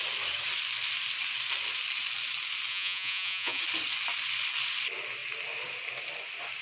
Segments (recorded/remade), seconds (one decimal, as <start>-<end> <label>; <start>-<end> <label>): 0.0-2.7 recorded; 2.7-3.6 remade; 3.6-6.6 recorded